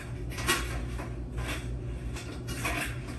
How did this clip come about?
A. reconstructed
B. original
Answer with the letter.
B